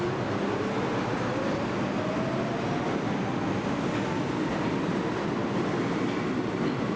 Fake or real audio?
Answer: real